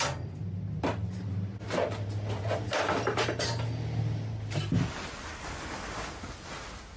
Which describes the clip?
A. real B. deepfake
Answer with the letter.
A